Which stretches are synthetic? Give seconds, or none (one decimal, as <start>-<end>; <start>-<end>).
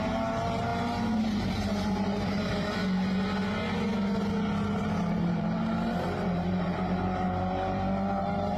0.0-0.7; 1.2-2.8; 4.8-8.6